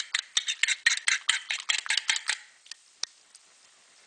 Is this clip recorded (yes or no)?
yes